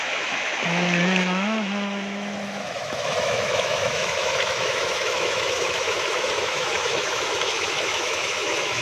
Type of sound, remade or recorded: remade